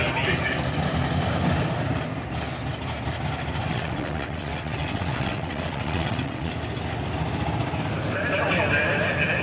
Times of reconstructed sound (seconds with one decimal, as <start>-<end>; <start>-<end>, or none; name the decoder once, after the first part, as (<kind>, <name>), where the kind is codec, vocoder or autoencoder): 3.7-6.5 (vocoder, WaveNeXt)